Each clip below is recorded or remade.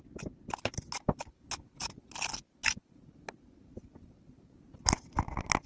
recorded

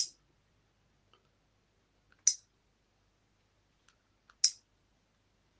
recorded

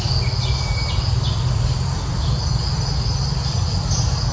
recorded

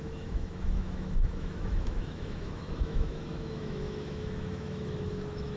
remade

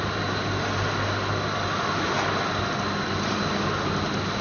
recorded